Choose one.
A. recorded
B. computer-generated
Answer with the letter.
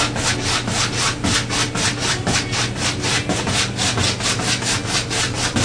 A